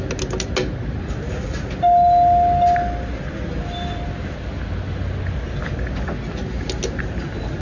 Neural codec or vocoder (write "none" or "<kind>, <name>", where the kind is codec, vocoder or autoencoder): none